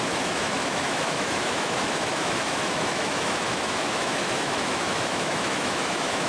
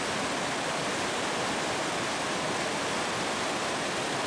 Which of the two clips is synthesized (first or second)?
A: first